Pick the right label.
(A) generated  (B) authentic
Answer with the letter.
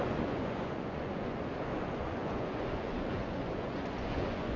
A